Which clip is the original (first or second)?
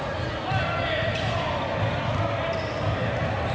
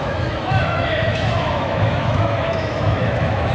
first